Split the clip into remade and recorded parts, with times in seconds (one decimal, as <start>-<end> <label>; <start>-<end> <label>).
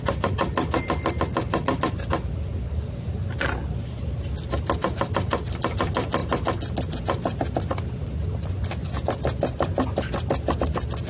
0.0-11.1 recorded